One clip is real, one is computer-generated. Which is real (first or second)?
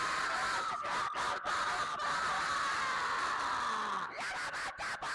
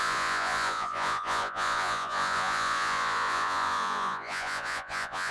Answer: first